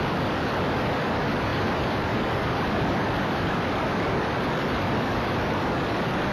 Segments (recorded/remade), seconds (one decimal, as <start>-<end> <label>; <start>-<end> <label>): 0.0-6.3 remade

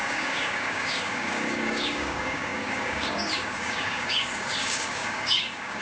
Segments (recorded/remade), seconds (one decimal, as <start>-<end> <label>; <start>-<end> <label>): 0.0-5.8 remade